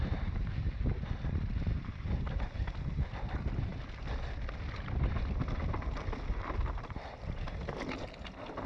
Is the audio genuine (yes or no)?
yes